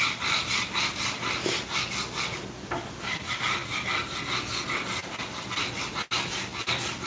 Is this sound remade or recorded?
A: recorded